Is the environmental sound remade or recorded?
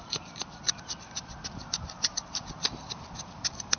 recorded